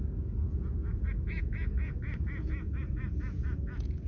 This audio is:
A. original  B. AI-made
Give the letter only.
B